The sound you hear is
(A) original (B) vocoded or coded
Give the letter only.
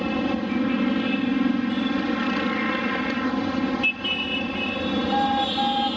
A